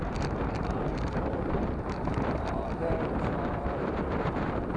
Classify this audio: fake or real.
fake